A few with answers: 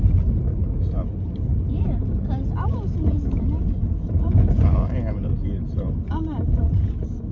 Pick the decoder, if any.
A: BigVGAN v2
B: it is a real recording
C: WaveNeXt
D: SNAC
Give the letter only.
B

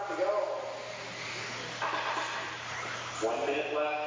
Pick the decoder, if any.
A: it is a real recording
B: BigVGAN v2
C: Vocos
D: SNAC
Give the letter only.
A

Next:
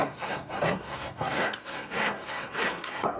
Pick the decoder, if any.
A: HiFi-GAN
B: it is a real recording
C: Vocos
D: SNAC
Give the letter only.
D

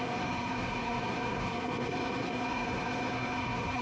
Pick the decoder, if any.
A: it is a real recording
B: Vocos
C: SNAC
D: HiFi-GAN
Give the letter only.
C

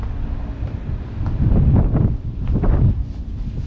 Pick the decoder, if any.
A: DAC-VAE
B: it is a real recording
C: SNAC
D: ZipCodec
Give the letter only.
B